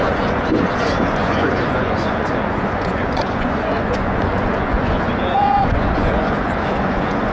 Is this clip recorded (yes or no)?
no